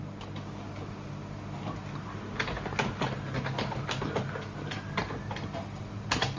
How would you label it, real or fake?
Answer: real